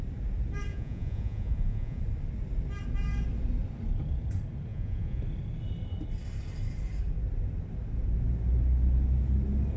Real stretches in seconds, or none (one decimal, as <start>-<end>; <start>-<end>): 0.0-0.7; 2.0-4.7; 5.2-9.8